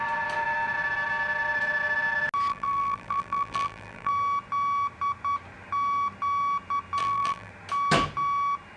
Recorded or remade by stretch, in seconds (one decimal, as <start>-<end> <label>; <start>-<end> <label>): 0.0-2.5 recorded; 2.5-4.1 remade; 4.1-7.0 recorded; 7.0-7.5 remade; 7.5-8.8 recorded